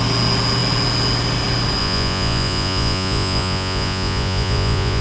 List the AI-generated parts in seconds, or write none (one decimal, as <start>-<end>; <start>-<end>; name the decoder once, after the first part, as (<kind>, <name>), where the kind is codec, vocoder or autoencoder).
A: 1.8-5.0 (vocoder, Vocos)